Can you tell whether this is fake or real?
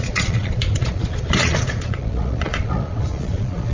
fake